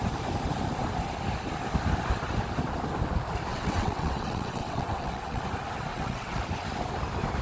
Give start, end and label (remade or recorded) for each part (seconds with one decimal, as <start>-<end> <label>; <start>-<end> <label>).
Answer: 0.0-3.5 recorded; 3.5-5.4 remade; 5.4-5.9 recorded; 5.9-6.4 remade; 6.4-7.4 recorded